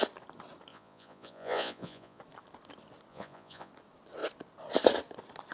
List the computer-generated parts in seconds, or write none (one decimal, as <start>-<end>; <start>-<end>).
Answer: 0.7-2.2; 3.1-3.7